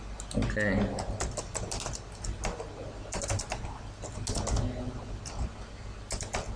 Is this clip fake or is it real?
real